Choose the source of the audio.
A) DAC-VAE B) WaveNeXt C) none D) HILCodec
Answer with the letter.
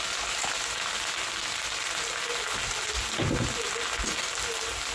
C